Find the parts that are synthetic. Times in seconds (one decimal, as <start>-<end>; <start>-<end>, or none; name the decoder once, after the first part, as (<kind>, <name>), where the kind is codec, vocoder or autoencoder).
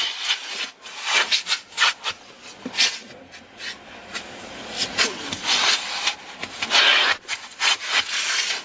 none